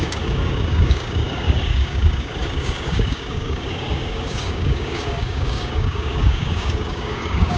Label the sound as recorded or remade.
remade